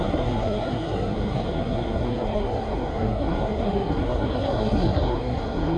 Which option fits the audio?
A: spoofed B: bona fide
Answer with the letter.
A